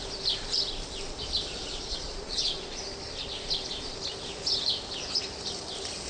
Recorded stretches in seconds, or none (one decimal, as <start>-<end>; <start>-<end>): 0.0-1.6; 2.8-6.1